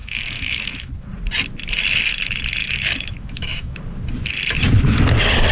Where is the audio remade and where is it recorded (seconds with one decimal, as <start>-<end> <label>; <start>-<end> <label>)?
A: 0.0-0.9 remade; 0.9-2.6 recorded; 2.6-3.8 remade; 3.8-5.5 recorded